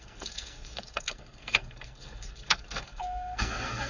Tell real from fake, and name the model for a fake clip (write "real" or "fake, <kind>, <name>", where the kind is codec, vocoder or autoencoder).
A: fake, codec, SNAC